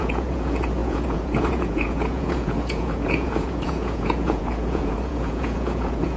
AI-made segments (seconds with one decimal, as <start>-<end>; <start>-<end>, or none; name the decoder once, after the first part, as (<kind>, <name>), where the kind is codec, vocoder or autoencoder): 0.0-6.2 (vocoder, Vocos)